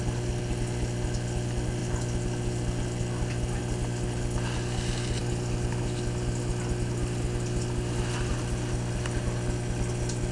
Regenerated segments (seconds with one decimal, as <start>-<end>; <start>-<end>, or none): none